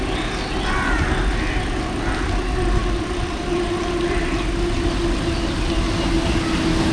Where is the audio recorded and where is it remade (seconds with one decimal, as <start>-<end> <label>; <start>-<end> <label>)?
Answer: 0.0-6.9 recorded